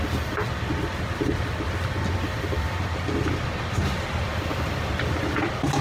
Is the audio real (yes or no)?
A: yes